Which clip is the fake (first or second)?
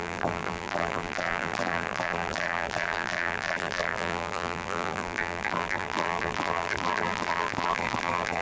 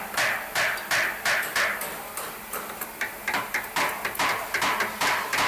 first